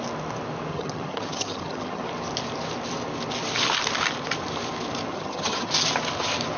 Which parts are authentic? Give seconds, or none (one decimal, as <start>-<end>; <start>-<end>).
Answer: 0.0-0.7; 2.0-5.1; 5.7-6.6